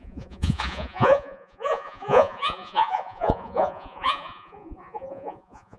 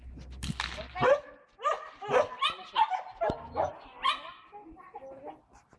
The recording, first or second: second